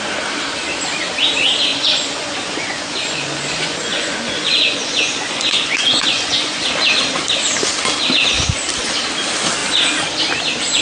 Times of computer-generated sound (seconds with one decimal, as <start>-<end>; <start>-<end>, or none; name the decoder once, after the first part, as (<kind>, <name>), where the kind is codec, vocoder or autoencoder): 1.7-6.7 (vocoder, Vocos)